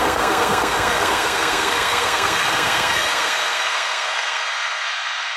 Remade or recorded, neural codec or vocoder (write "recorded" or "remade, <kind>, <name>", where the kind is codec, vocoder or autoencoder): remade, codec, SNAC